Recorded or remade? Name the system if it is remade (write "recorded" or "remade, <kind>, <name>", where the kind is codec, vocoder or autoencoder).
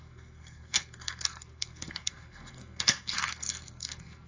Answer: remade, codec, SNAC